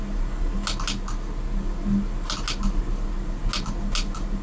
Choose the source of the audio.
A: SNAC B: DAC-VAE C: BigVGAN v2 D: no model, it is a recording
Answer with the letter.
D